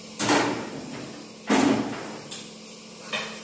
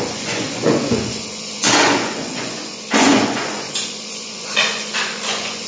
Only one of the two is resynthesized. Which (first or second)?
second